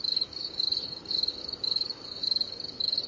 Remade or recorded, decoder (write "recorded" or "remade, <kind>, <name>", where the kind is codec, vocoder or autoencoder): remade, codec, DAC